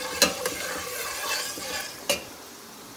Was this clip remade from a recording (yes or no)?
no